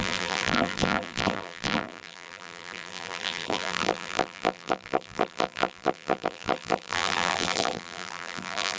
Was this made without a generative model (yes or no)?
no